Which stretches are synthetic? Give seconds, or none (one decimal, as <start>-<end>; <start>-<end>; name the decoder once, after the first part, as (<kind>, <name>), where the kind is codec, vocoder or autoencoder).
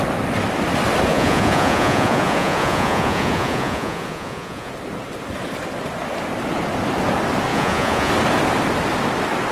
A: 1.1-4.7 (vocoder, Vocos); 7.5-8.1